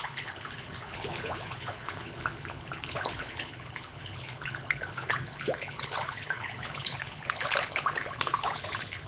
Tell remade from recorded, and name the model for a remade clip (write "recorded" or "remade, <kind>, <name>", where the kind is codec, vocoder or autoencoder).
remade, codec, HILCodec